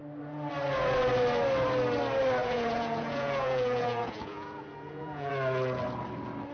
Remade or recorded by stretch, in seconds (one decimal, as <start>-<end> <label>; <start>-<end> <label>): 0.0-2.4 recorded; 2.4-5.3 remade; 5.3-6.5 recorded